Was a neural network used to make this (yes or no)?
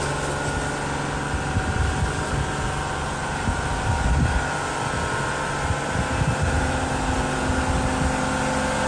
no